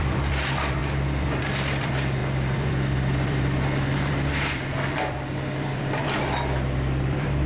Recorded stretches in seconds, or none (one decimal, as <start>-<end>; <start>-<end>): none